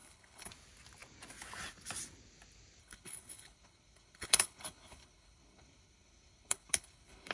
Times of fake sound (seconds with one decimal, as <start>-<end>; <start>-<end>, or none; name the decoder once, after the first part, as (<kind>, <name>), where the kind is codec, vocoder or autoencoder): 0.0-0.5 (codec, HILCodec); 2.8-7.3